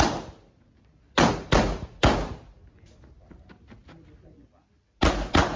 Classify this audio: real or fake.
real